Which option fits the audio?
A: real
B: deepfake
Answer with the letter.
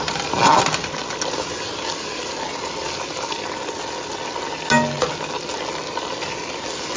A